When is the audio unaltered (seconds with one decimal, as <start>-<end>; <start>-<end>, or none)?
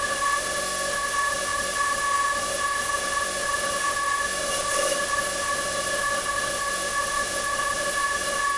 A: none